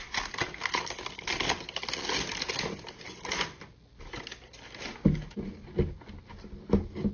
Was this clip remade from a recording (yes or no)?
no